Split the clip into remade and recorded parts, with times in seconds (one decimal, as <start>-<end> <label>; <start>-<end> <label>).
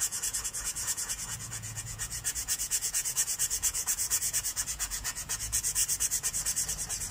0.0-5.8 remade; 5.8-7.1 recorded